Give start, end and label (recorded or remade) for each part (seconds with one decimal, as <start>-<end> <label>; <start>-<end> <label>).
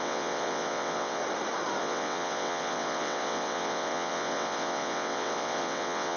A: 0.0-1.2 remade; 1.2-1.8 recorded; 1.8-6.2 remade